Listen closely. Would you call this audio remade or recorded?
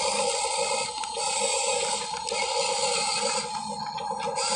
recorded